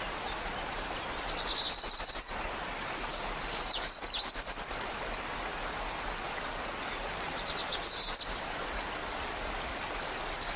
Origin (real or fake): real